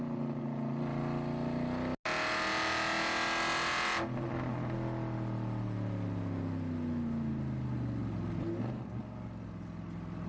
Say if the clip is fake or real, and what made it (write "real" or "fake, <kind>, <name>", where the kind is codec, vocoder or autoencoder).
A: real